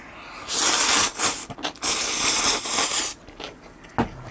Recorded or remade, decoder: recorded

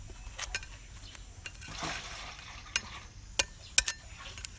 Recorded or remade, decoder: recorded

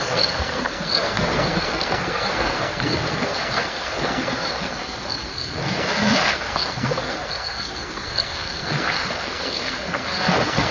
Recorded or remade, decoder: remade, codec, SNAC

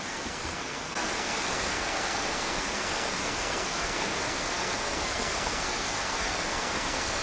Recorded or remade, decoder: remade, codec, SNAC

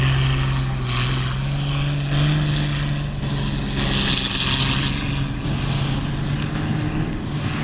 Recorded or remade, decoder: recorded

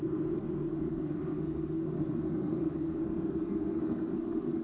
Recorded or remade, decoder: remade, codec, SNAC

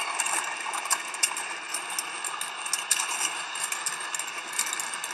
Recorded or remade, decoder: recorded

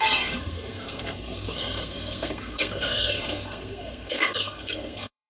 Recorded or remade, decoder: remade, codec, SNAC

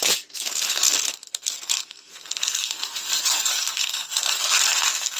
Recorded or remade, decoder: remade, codec, SNAC